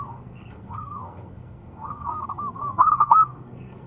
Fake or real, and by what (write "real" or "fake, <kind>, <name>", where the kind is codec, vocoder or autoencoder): fake, codec, SNAC